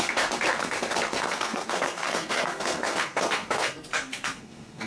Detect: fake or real fake